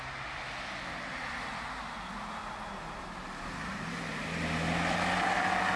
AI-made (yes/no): no